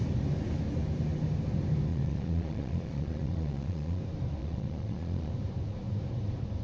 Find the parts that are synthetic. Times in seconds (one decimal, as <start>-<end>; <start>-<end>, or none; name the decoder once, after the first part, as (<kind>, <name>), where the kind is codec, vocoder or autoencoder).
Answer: 1.9-4.0 (vocoder, Vocos); 4.4-5.3